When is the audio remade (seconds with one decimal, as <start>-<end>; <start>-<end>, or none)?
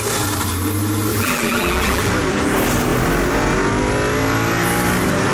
1.1-2.1